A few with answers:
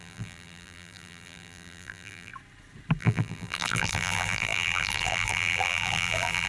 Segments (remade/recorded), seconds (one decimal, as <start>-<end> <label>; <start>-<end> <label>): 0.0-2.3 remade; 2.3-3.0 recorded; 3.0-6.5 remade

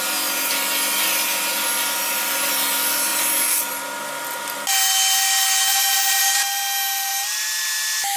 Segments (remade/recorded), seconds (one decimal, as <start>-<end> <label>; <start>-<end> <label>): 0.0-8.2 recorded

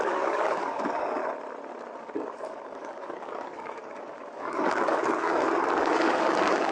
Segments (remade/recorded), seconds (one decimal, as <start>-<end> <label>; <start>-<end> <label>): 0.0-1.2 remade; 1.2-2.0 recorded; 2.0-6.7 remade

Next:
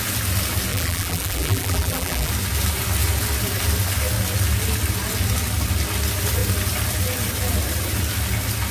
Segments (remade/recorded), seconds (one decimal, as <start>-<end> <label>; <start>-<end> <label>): 0.0-0.7 recorded; 0.7-2.3 remade; 2.3-8.7 recorded

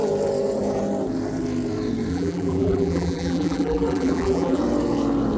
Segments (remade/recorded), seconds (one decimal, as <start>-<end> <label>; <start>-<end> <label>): 0.0-2.1 recorded; 2.1-4.6 remade; 4.6-5.4 recorded